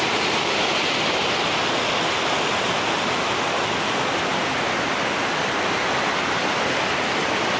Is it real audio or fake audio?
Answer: real